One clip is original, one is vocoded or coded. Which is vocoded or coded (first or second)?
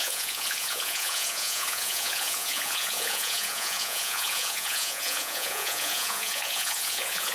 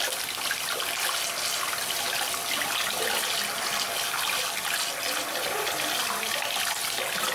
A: first